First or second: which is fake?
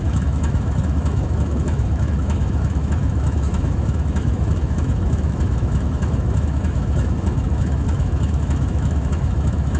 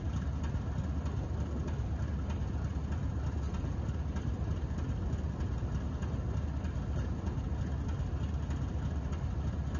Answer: first